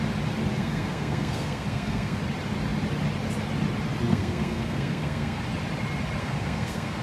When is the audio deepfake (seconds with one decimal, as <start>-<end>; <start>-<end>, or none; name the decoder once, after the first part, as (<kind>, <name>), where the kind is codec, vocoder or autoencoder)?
0.6-2.2 (codec, SNAC); 4.1-5.4; 6.2-7.0